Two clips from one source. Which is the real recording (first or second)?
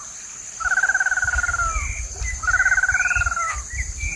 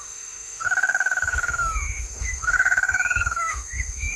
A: first